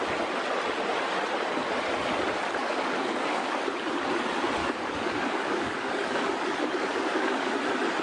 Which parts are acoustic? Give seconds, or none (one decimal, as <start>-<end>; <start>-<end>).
0.0-2.6; 3.6-4.6; 7.5-8.0